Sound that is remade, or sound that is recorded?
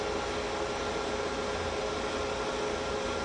recorded